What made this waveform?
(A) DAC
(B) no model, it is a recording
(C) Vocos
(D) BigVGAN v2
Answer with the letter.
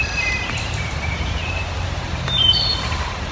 D